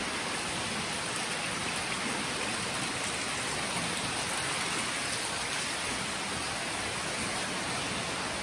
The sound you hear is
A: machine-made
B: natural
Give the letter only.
B